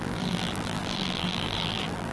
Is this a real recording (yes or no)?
no